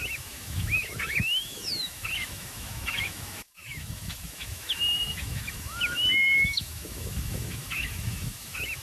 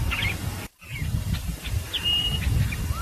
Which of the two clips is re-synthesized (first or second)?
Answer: first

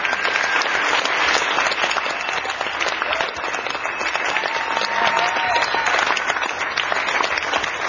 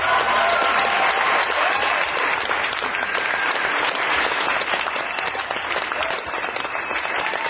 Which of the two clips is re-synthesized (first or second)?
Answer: second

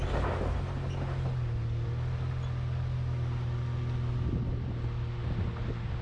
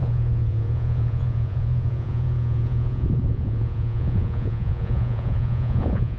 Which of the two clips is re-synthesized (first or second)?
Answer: second